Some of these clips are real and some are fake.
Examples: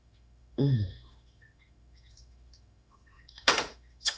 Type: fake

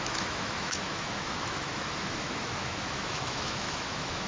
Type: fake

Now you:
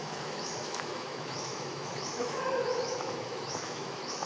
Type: fake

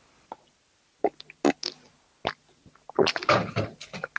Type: real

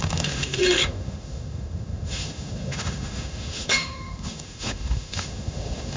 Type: fake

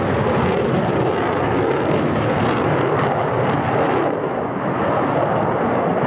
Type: real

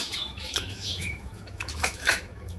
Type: fake